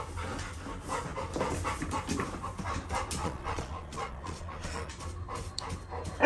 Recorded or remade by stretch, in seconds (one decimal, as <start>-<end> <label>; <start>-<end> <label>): 0.0-3.2 recorded; 3.2-4.9 remade; 4.9-6.3 recorded